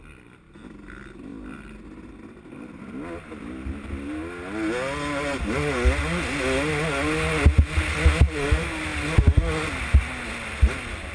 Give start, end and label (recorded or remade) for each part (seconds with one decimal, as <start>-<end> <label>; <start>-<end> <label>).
0.0-11.1 recorded